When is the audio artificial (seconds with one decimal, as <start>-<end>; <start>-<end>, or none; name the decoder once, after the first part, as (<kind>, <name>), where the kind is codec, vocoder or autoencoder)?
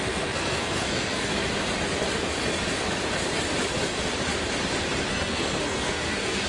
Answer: 0.0-1.3 (codec, SNAC); 5.1-6.5